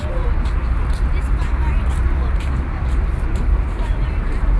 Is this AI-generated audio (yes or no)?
yes